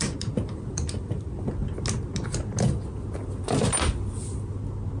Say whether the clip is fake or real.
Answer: real